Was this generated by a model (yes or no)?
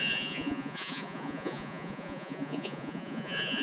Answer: yes